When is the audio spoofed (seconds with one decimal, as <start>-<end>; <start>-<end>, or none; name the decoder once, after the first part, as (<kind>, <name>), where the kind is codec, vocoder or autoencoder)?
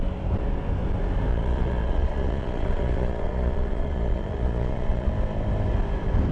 1.3-5.1 (vocoder, Vocos)